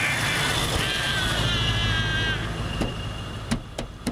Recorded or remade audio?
recorded